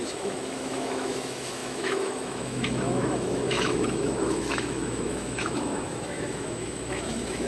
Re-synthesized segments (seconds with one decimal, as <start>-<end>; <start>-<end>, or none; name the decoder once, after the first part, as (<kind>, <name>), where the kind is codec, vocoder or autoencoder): 0.0-7.5 (autoencoder, DAC-VAE)